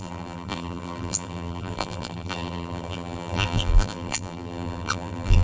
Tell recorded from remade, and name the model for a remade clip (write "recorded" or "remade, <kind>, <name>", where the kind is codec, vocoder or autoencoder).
remade, vocoder, BigVGAN v2